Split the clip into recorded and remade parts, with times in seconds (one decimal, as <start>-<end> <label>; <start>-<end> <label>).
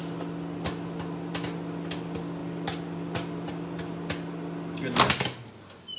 0.0-6.0 recorded